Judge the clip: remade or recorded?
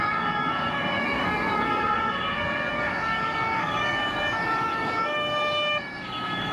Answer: remade